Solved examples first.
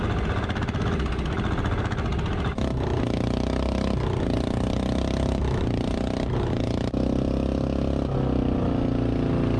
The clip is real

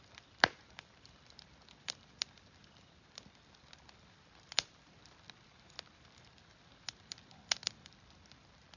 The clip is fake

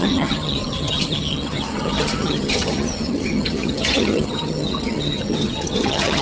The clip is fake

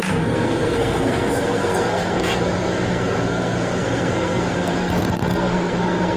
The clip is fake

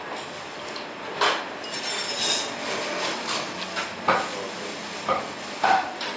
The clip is real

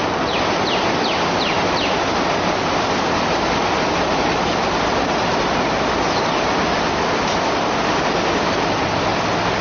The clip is real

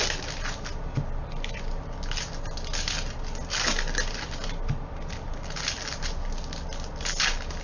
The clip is real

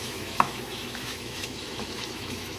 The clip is fake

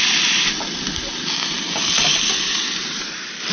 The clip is real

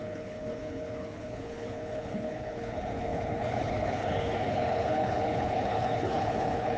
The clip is fake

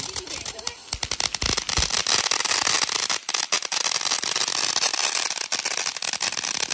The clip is real